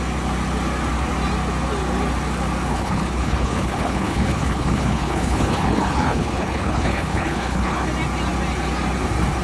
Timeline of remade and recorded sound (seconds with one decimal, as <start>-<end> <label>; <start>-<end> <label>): 0.0-2.7 recorded; 2.7-7.8 remade; 7.8-9.4 recorded